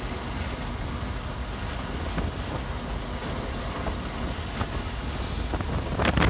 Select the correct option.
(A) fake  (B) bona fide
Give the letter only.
B